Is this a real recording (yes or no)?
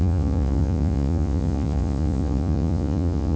no